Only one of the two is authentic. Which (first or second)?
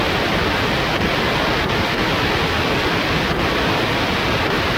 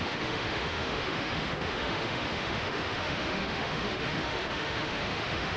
first